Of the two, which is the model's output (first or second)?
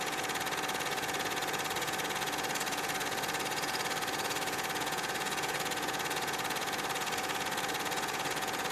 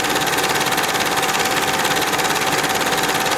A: first